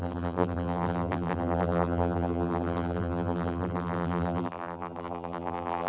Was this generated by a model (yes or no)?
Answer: yes